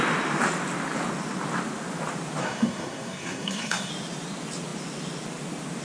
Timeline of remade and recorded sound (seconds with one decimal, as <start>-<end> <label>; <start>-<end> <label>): 0.0-2.4 recorded; 2.4-3.9 remade; 3.9-5.8 recorded